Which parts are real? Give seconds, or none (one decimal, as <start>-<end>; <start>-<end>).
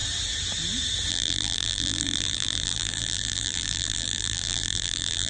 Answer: 0.0-1.1